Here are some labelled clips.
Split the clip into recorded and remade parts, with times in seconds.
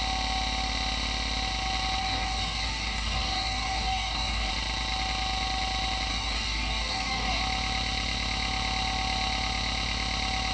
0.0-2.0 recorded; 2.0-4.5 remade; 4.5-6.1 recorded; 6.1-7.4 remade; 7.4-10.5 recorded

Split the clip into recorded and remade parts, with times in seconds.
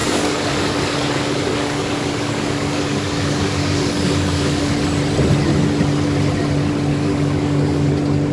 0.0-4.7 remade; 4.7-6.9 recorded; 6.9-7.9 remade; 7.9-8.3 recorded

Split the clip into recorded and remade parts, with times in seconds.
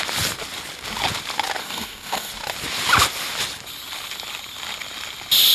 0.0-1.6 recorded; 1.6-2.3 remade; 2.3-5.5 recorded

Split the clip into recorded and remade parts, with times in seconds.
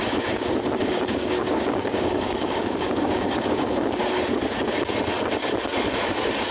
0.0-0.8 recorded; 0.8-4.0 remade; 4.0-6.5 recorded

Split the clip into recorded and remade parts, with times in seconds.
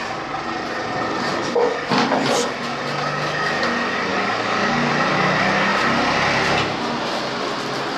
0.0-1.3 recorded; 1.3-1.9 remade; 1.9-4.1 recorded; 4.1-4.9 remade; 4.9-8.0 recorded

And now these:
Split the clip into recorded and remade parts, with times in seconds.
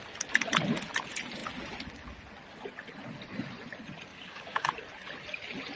0.0-4.1 recorded; 4.1-4.7 remade; 4.7-5.8 recorded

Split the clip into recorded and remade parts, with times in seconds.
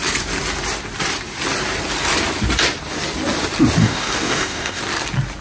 0.0-3.8 recorded; 3.8-4.8 remade; 4.8-5.4 recorded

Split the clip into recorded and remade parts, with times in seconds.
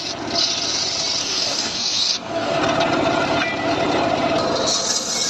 0.0-1.2 recorded; 1.2-2.6 remade; 2.6-5.3 recorded